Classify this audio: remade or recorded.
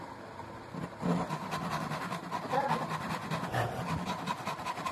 recorded